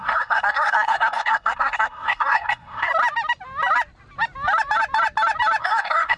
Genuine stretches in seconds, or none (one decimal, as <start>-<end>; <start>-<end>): 2.9-5.6